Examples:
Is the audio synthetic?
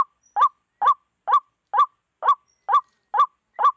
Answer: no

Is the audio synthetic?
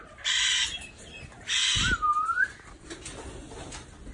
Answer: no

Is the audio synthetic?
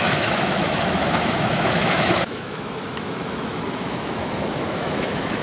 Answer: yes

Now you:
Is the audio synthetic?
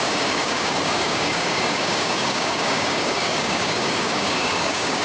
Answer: yes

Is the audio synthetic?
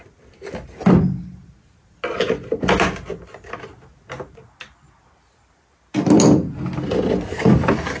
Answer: no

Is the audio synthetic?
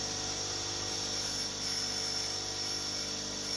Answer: no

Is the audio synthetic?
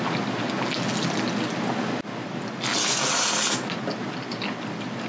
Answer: no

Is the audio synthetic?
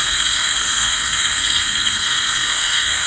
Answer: yes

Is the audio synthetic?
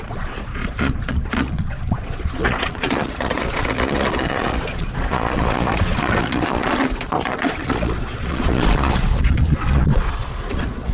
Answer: yes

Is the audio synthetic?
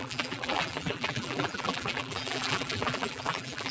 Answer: yes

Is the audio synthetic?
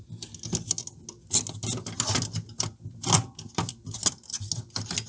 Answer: no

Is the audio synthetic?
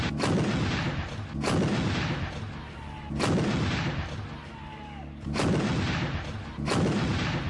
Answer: no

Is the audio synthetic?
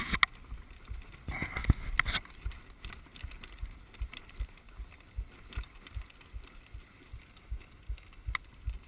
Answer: no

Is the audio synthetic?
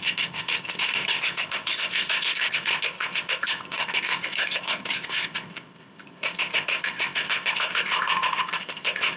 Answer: yes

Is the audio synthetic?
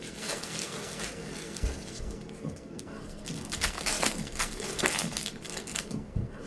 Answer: yes